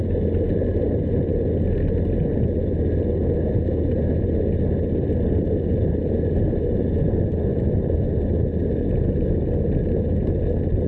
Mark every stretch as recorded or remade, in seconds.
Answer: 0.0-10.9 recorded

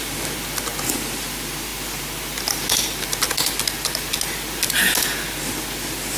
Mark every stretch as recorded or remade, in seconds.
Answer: 0.0-6.2 recorded

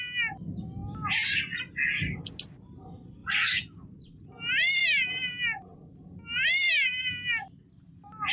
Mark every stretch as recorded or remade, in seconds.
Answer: 0.0-3.2 recorded; 3.2-4.1 remade; 4.1-8.3 recorded

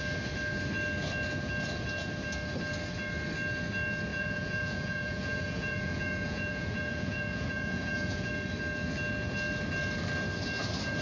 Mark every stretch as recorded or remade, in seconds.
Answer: 0.0-4.1 recorded; 4.1-8.3 remade; 8.3-11.0 recorded

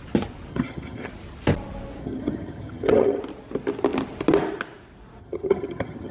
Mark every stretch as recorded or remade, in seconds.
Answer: 0.0-0.5 recorded; 0.5-1.1 remade; 1.1-2.0 recorded; 2.0-3.2 remade; 3.2-5.2 recorded; 5.2-6.1 remade

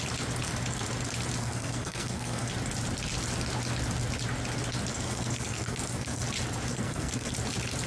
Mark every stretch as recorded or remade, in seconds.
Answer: 0.0-1.4 recorded; 1.4-2.5 remade; 2.5-4.9 recorded; 4.9-6.2 remade; 6.2-6.7 recorded; 6.7-7.3 remade; 7.3-7.9 recorded

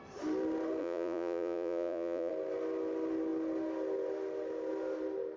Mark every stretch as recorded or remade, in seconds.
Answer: 0.0-0.8 recorded; 0.8-2.3 remade; 2.3-5.4 recorded